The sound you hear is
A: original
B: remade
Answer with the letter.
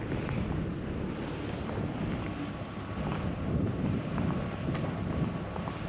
A